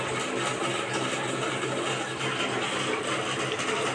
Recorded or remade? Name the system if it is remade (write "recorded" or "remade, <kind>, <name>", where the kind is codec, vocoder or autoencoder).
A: recorded